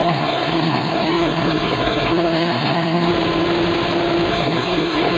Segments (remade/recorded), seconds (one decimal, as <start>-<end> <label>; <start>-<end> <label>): 0.0-3.1 remade; 3.1-4.3 recorded; 4.3-5.2 remade